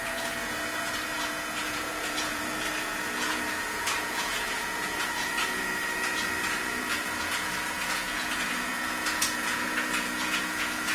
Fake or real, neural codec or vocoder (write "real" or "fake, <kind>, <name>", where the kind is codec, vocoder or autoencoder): fake, vocoder, Vocos